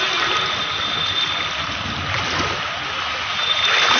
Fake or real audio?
real